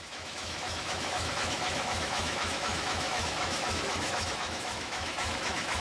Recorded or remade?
remade